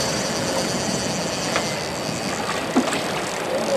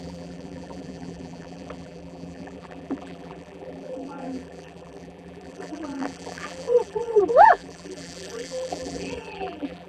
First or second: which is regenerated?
second